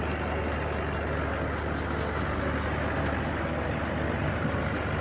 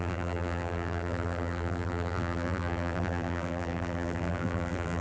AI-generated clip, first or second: second